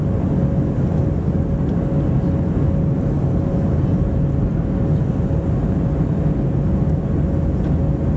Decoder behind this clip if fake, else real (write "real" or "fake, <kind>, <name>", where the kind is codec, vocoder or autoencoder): real